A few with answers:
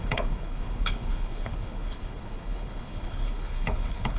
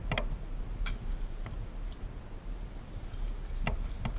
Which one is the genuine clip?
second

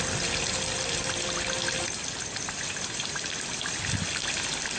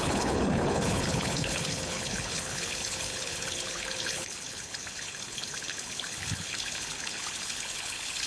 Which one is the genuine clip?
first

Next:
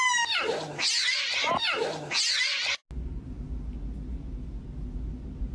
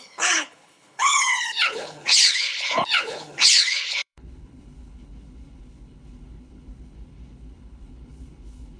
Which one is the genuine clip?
first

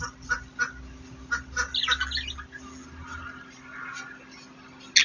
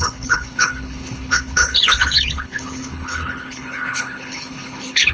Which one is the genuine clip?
first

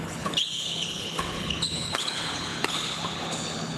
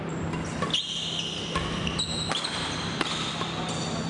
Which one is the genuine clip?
second